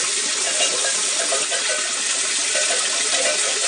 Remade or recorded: recorded